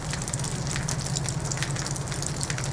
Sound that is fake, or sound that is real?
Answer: real